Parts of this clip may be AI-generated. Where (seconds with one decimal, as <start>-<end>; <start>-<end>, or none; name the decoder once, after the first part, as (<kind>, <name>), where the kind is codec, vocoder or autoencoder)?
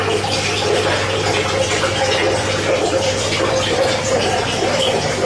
2.2-4.8 (vocoder, BigVGAN v2)